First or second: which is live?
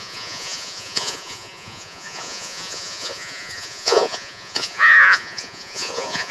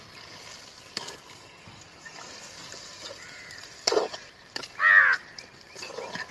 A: second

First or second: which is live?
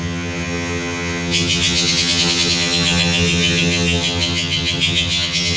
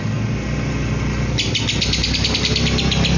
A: second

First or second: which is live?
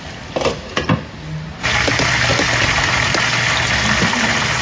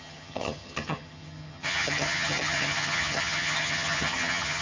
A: first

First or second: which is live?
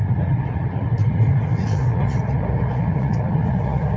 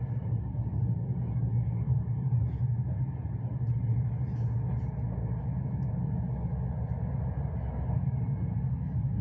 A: second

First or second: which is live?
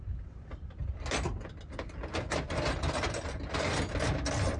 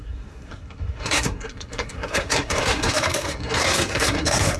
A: first